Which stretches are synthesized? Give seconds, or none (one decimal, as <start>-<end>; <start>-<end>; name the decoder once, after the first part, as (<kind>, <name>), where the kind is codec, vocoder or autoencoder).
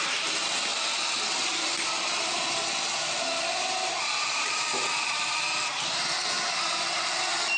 0.7-5.3 (vocoder, BigVGAN v2)